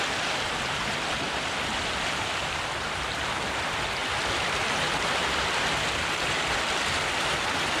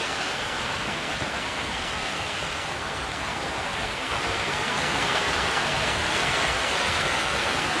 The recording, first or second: first